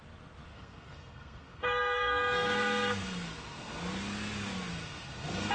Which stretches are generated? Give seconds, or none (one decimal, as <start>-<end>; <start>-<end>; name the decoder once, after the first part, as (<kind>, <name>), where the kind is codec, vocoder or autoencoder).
0.5-3.8 (codec, SNAC); 4.7-5.5